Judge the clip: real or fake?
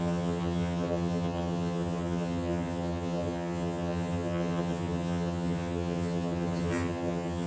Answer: fake